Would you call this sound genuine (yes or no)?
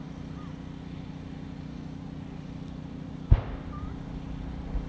yes